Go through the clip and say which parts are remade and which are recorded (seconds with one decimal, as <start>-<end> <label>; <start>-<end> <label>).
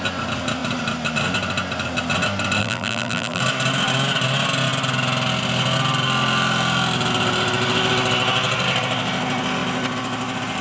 0.0-2.6 recorded; 2.6-3.4 remade; 3.4-10.6 recorded